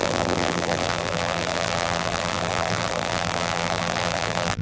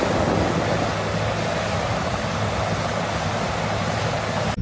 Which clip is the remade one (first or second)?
first